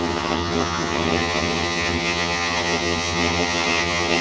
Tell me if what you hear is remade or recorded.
remade